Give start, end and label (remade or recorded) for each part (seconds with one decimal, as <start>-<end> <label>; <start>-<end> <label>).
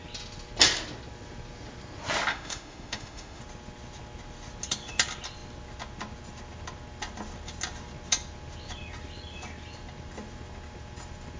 0.0-2.3 recorded; 2.3-3.4 remade; 3.4-11.4 recorded